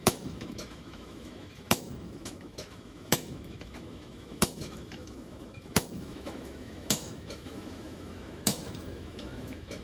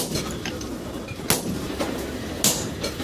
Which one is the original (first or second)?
second